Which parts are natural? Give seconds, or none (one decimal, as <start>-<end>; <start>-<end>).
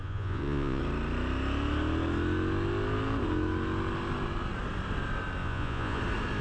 0.8-5.4; 6.0-6.4